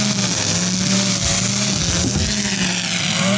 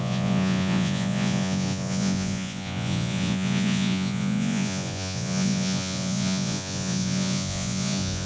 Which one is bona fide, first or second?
first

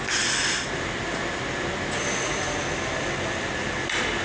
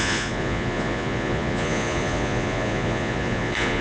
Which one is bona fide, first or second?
first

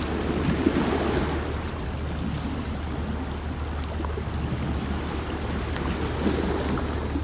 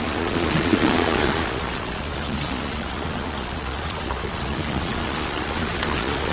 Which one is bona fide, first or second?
first